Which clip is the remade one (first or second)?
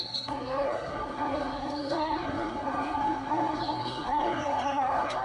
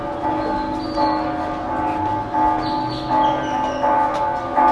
first